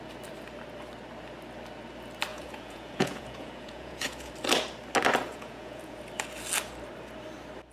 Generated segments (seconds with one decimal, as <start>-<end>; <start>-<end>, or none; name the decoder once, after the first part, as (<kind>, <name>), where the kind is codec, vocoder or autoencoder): 2.3-4.3 (vocoder, Vocos); 5.3-6.0